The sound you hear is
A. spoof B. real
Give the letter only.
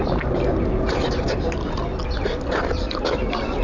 B